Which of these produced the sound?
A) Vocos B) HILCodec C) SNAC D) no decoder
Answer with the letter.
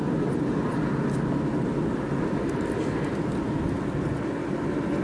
D